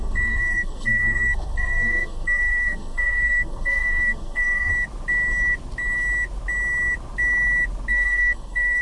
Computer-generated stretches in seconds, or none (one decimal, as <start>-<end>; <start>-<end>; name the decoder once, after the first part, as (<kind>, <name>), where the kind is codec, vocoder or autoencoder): 0.0-4.7 (codec, SNAC); 7.9-8.8